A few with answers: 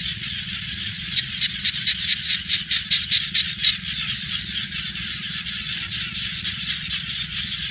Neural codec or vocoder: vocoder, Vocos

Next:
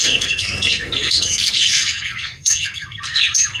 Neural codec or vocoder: codec, SNAC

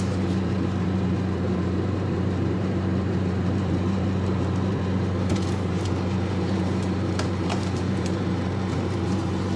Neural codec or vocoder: vocoder, BigVGAN v2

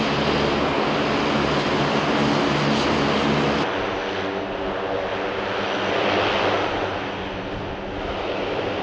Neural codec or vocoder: none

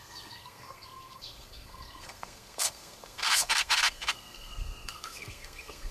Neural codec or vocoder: codec, SNAC